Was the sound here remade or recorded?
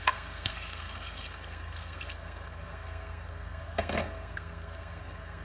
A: remade